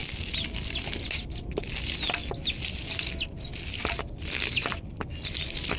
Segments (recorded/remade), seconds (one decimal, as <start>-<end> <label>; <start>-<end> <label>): 0.0-5.8 recorded